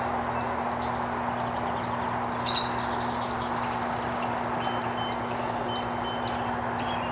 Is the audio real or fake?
real